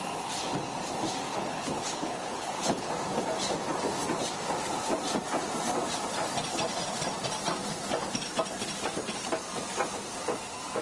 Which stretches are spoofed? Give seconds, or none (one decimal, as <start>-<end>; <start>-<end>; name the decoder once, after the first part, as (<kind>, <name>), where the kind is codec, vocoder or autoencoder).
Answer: 1.3-2.9 (codec, HILCodec)